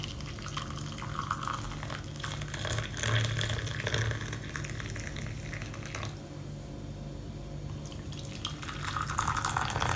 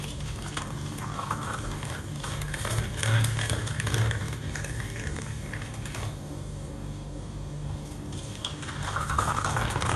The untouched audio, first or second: first